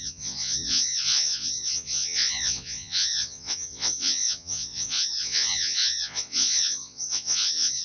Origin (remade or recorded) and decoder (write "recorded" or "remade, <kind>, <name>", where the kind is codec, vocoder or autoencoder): remade, vocoder, Vocos